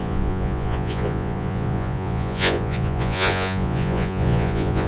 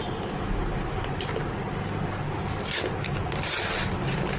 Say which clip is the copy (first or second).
first